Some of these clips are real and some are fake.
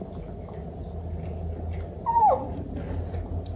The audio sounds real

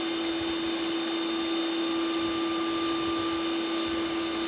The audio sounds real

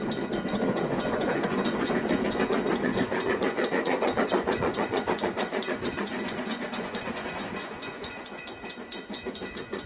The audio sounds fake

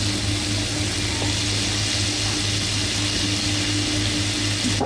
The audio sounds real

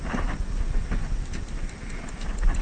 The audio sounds real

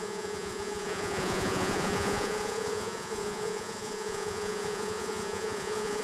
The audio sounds fake